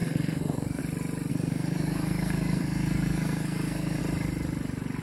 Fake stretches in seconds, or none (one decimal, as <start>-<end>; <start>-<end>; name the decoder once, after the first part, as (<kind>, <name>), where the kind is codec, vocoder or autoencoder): 0.0-0.8 (codec, SNAC); 1.3-4.0